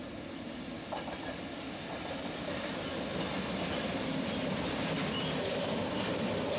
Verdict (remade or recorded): recorded